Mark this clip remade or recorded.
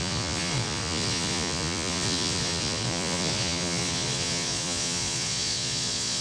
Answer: remade